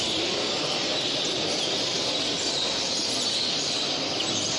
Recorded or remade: recorded